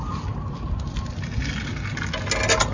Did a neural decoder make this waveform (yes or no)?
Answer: no